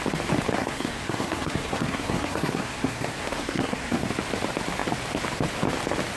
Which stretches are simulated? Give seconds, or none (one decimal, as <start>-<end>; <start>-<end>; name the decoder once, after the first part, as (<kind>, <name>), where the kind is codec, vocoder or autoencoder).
0.6-4.1 (codec, SNAC)